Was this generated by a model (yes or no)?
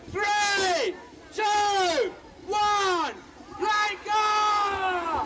no